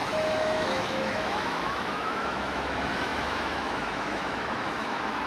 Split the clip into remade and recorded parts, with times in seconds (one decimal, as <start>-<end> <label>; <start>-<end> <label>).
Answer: 0.0-5.3 remade